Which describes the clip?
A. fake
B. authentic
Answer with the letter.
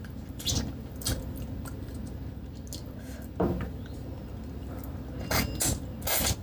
B